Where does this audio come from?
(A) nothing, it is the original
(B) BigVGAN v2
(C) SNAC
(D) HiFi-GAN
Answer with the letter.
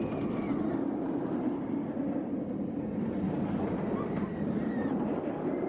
A